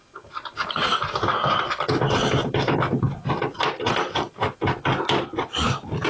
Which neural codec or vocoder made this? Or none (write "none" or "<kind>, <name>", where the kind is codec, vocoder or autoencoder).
none